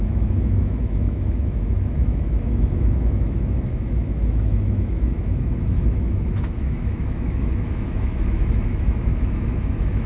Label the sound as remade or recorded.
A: remade